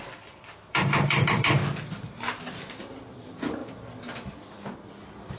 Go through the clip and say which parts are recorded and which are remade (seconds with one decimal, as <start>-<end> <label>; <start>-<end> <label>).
0.0-1.6 remade; 1.6-2.7 recorded; 2.7-3.6 remade; 3.6-5.4 recorded